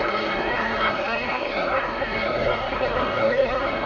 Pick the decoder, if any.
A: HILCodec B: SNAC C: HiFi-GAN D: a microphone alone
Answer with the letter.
B